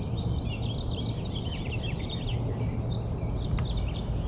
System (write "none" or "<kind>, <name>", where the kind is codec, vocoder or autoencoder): none